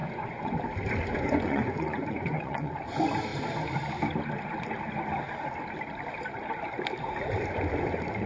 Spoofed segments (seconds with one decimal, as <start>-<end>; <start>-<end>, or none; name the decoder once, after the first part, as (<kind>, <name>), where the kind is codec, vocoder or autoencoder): 0.0-0.5 (vocoder, Vocos); 1.1-2.7